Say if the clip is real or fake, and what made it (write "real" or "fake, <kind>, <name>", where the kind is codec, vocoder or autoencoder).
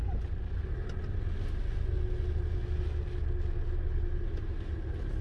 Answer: real